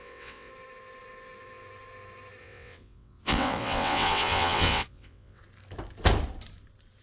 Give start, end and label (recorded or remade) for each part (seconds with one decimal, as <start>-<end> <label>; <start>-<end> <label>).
0.0-0.5 remade; 0.5-2.4 recorded; 2.4-5.4 remade; 5.4-7.0 recorded